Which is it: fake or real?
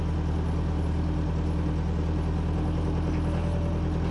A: real